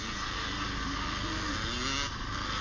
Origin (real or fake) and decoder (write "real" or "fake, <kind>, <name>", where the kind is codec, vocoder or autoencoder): real